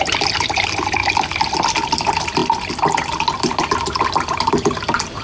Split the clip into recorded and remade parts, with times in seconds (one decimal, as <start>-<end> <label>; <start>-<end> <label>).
0.0-5.2 recorded